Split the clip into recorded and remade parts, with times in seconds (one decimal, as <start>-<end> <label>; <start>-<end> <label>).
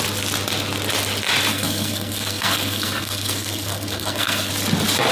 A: 0.0-1.5 recorded; 1.5-4.5 remade; 4.5-5.1 recorded